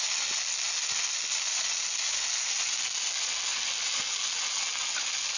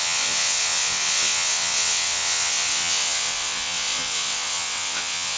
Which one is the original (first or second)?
first